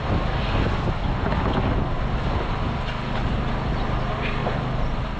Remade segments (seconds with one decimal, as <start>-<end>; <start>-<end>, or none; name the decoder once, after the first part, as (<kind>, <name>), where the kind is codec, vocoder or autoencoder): none